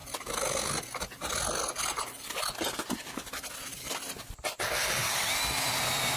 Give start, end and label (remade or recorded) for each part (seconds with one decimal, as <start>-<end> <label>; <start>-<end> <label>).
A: 0.0-6.2 recorded